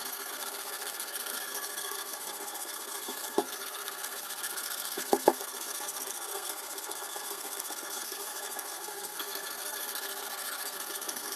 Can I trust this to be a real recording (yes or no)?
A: no